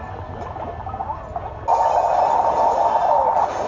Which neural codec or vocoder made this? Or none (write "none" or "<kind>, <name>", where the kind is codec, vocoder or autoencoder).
none